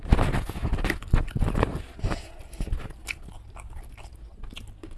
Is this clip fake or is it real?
real